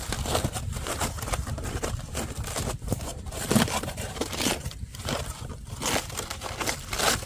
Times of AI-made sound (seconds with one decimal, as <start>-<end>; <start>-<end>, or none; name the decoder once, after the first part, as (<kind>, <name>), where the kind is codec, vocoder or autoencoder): 0.5-2.1 (vocoder, BigVGAN v2); 3.1-5.2